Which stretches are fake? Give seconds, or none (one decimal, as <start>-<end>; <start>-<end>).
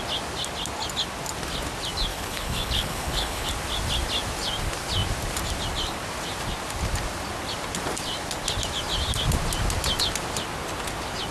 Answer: 2.1-3.5